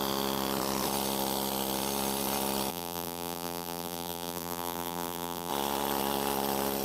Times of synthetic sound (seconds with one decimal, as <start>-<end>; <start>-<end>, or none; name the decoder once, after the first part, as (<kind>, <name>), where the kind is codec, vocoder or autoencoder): 2.7-5.5 (vocoder, BigVGAN v2)